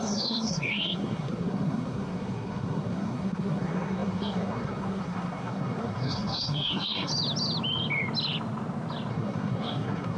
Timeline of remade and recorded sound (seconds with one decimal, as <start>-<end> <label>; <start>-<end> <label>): 0.0-7.1 remade; 7.1-9.1 recorded; 9.1-10.2 remade